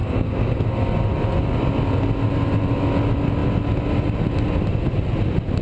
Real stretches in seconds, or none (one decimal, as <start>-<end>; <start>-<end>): 0.6-5.6